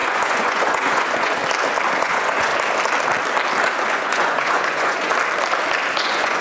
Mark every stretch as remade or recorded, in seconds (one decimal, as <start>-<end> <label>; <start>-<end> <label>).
0.0-1.4 remade; 1.4-2.0 recorded; 2.0-2.5 remade; 2.5-3.9 recorded; 3.9-5.1 remade; 5.1-5.9 recorded; 5.9-6.4 remade